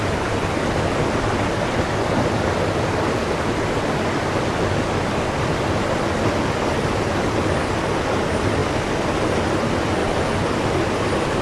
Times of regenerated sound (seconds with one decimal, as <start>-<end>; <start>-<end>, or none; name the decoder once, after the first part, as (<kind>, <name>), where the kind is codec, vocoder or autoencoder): none